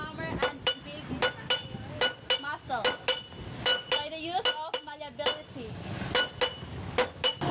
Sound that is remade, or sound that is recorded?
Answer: recorded